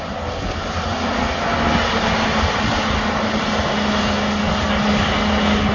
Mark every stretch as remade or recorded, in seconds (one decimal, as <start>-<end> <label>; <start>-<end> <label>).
0.0-5.7 recorded